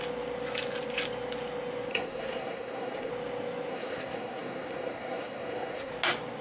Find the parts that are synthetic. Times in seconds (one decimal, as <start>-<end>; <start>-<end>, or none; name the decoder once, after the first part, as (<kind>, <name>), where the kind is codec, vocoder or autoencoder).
1.9-3.1 (codec, SNAC); 3.7-5.9